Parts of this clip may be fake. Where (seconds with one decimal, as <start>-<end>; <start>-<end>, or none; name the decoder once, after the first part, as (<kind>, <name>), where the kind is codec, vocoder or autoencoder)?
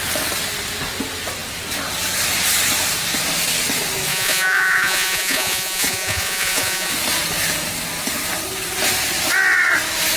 4.1-6.9 (vocoder, Vocos)